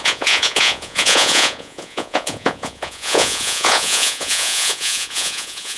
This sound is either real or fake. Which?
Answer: fake